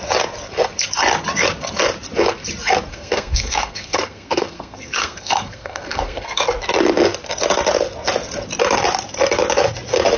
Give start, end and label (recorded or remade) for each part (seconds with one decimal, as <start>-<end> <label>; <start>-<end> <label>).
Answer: 0.0-2.9 recorded; 2.9-6.4 remade; 6.4-10.2 recorded